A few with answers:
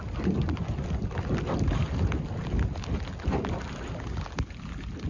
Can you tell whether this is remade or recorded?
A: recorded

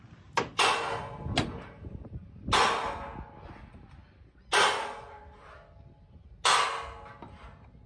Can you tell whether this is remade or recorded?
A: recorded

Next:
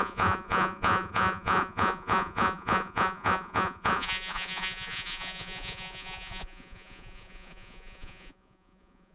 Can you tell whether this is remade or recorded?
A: remade